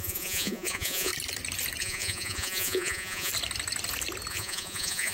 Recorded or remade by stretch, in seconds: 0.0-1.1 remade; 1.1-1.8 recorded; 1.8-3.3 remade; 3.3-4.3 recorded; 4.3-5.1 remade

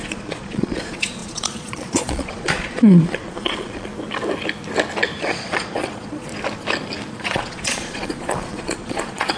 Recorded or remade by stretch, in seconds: 0.0-3.9 remade; 3.9-5.2 recorded; 5.2-6.3 remade; 6.3-7.1 recorded; 7.1-9.4 remade

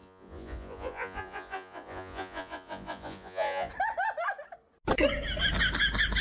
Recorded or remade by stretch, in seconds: 0.0-3.7 remade; 3.7-6.2 recorded

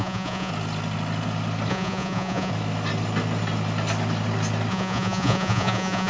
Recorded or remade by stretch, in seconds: 0.0-0.5 remade; 0.5-1.7 recorded; 1.7-2.5 remade; 2.5-4.7 recorded; 4.7-6.1 remade

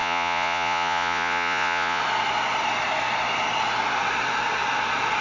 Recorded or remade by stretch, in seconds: 0.0-2.0 remade; 2.0-5.2 recorded

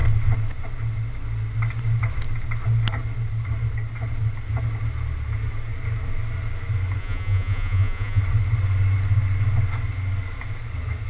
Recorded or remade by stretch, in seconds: 0.0-7.0 recorded; 7.0-8.2 remade; 8.2-11.1 recorded